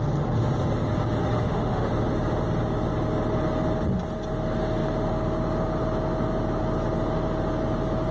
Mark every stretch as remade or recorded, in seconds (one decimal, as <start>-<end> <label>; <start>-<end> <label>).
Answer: 0.0-1.3 recorded; 1.3-1.9 remade; 1.9-8.1 recorded